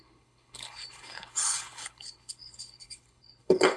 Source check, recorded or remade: remade